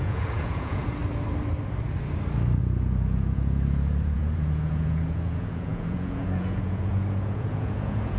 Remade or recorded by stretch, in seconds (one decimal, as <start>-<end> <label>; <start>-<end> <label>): 0.0-1.0 remade; 1.0-2.6 recorded; 2.6-8.2 remade